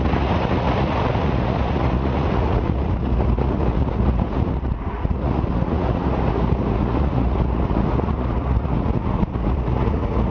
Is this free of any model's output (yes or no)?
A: no